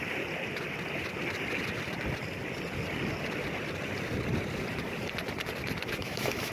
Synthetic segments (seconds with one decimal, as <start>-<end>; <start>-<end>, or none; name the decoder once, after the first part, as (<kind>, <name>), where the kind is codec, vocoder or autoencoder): 6.0-6.5 (autoencoder, DAC-VAE)